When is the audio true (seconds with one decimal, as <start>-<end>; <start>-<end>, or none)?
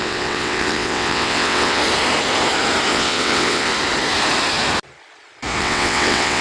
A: 1.8-2.9; 3.7-5.6